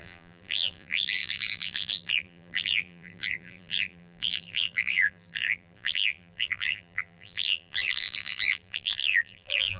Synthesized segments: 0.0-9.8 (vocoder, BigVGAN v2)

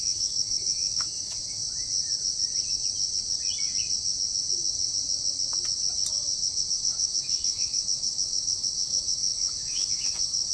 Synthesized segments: 0.0-1.6 (autoencoder, DAC-VAE); 6.7-10.5

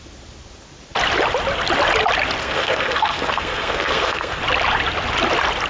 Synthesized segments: 2.4-4.4 (codec, SNAC)